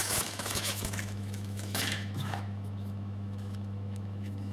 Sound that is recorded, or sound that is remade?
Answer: remade